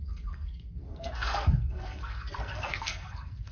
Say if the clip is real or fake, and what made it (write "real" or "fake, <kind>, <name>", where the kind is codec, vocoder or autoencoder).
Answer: fake, codec, SNAC